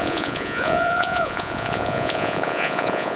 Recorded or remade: remade